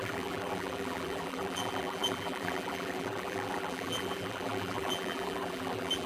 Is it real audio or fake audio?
fake